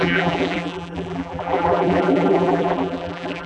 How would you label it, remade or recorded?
remade